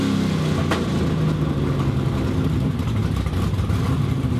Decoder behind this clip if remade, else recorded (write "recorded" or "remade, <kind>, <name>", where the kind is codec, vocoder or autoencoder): recorded